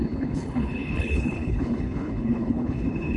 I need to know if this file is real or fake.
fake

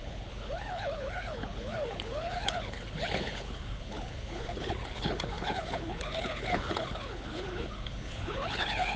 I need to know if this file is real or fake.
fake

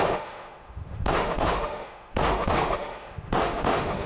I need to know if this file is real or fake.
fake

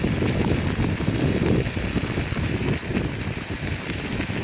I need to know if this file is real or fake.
real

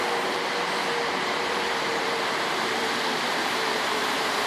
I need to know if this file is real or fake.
fake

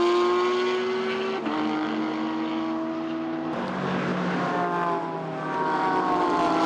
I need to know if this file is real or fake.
real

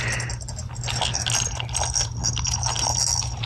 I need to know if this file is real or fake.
real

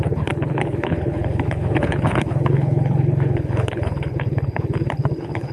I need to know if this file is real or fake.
fake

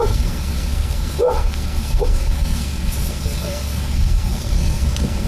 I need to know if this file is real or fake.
fake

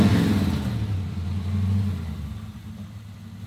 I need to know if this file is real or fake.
real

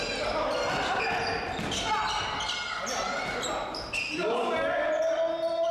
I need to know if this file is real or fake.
real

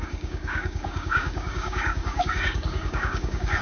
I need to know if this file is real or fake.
fake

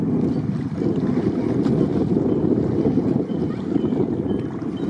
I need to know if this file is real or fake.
real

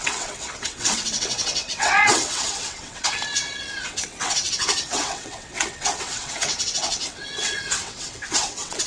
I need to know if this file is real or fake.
fake